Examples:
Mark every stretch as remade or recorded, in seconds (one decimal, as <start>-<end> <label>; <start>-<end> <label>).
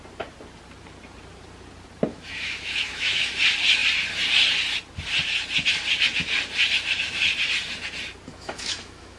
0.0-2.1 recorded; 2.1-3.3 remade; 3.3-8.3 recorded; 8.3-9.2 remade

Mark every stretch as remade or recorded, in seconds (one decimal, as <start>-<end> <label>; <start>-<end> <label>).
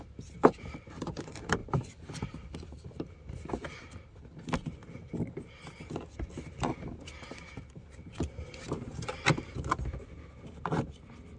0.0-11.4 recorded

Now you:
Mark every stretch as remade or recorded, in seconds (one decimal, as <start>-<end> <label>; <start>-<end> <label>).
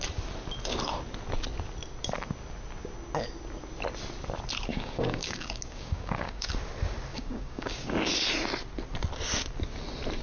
0.0-4.7 recorded; 4.7-6.5 remade; 6.5-7.1 recorded; 7.1-8.1 remade; 8.1-10.2 recorded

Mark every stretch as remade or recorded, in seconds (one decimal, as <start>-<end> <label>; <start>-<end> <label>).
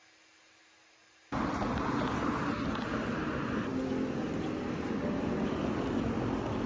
0.0-6.7 recorded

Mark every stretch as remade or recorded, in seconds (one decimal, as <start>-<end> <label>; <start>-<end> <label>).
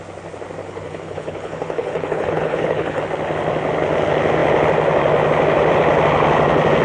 0.0-0.6 recorded; 0.6-3.0 remade; 3.0-6.8 recorded